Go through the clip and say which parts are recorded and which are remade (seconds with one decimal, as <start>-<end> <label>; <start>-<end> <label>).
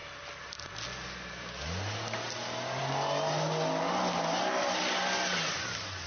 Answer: 0.0-6.1 recorded